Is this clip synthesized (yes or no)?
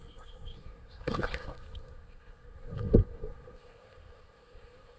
yes